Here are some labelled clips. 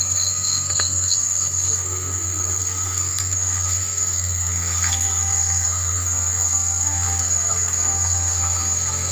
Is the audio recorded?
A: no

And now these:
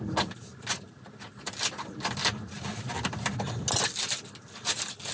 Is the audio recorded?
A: yes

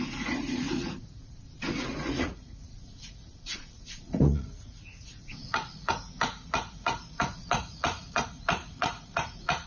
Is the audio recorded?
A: no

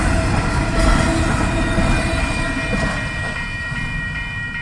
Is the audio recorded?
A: no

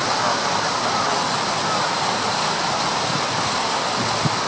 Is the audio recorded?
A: yes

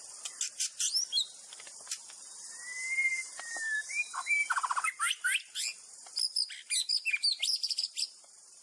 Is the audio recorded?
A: yes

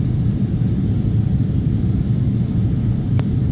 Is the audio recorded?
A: yes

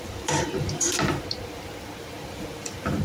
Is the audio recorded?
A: no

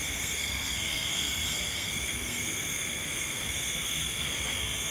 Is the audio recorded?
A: no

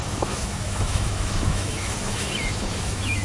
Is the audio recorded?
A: no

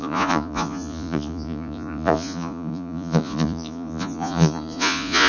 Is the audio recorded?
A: no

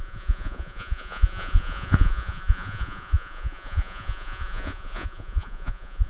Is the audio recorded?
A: no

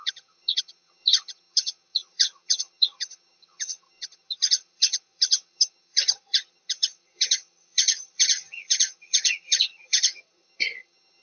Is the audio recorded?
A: no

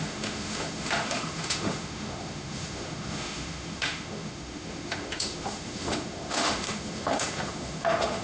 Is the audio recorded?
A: no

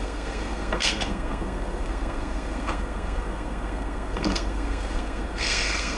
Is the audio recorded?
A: no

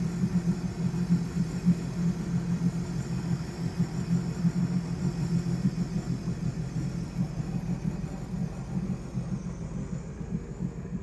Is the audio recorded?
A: yes